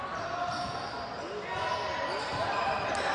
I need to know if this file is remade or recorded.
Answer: recorded